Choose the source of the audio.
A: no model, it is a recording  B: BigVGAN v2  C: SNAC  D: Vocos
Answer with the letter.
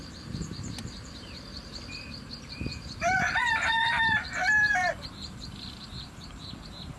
B